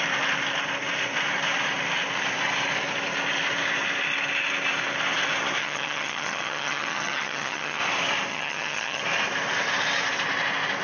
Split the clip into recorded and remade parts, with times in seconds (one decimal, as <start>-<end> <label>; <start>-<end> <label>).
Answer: 0.0-5.6 recorded; 5.6-7.8 remade; 7.8-8.3 recorded; 8.3-9.0 remade; 9.0-10.8 recorded